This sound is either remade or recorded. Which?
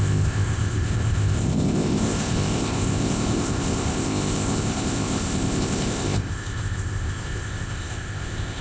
remade